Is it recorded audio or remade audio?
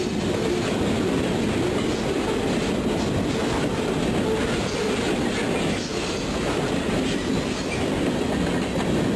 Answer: recorded